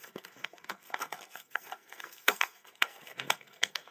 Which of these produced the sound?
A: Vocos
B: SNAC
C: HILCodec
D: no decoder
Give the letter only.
B